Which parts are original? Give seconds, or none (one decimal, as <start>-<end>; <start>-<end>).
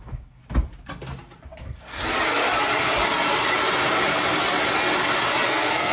0.4-1.6; 2.0-5.5